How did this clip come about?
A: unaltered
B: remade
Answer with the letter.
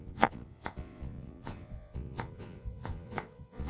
B